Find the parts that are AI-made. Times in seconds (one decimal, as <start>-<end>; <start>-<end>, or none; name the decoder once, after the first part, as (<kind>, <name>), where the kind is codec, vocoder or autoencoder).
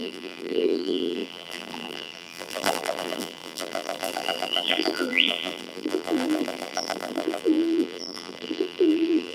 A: 0.0-9.3 (vocoder, BigVGAN v2)